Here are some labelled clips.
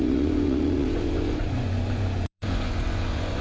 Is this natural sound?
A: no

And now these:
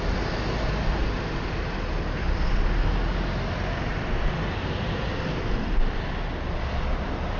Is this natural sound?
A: yes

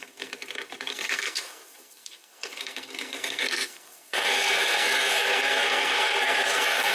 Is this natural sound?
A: no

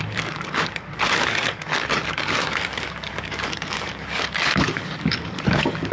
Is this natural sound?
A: no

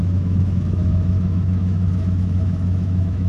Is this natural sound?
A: no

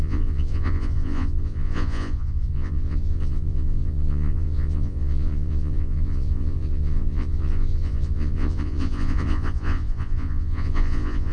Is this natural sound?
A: no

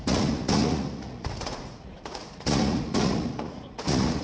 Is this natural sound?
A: no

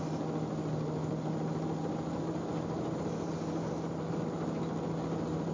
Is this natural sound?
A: yes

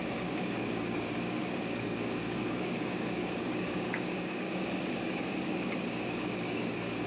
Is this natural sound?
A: no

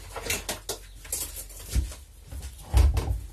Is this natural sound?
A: yes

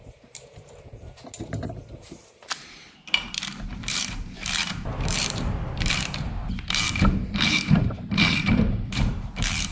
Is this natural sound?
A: no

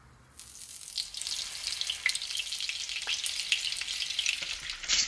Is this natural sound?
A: yes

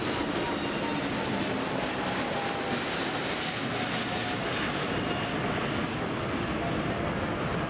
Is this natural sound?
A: yes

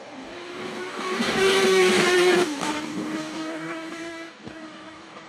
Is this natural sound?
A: no